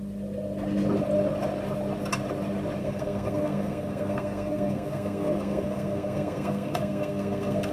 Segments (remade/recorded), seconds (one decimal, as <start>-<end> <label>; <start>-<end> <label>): 0.0-2.8 recorded; 2.8-7.7 remade